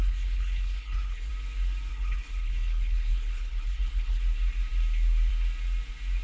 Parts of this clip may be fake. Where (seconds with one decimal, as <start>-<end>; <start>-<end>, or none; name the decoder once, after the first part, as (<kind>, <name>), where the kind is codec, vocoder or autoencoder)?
0.0-1.3 (codec, HILCodec); 1.9-4.2